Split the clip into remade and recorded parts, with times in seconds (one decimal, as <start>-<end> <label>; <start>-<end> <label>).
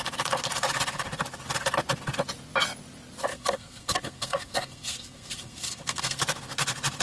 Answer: 0.0-3.3 recorded; 3.3-6.2 remade; 6.2-7.0 recorded